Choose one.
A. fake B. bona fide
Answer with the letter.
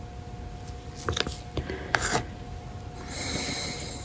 B